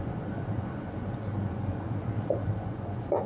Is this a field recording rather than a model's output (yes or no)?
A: no